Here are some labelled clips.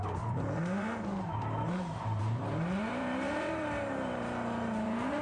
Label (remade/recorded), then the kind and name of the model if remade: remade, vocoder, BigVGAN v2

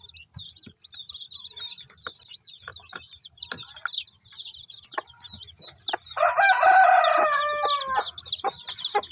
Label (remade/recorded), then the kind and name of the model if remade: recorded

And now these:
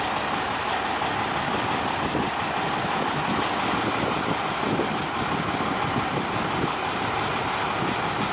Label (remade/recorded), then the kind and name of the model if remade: recorded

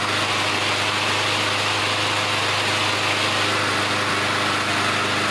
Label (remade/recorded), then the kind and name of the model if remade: recorded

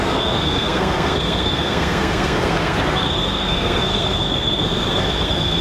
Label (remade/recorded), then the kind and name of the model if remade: remade, codec, SNAC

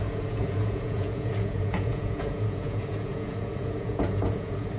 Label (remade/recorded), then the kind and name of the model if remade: remade, vocoder, Vocos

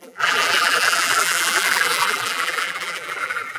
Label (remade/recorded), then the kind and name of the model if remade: remade, vocoder, BigVGAN v2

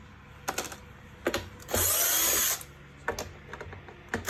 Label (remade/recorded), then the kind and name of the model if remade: recorded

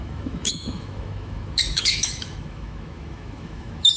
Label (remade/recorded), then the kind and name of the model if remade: remade, autoencoder, DAC-VAE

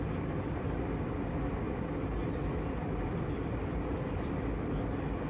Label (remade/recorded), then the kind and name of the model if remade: remade, vocoder, BigVGAN v2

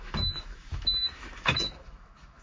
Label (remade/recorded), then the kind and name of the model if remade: remade, autoencoder, DAC-VAE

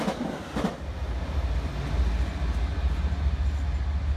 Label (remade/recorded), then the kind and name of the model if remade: recorded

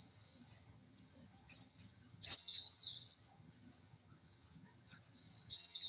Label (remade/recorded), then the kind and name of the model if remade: remade, vocoder, HiFi-GAN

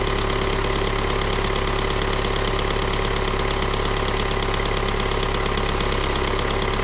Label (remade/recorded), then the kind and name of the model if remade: recorded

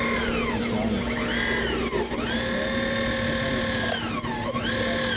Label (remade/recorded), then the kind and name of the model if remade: recorded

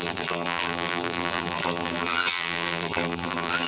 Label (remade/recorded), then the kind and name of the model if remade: remade, vocoder, BigVGAN v2